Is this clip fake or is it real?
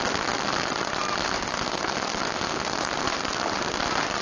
real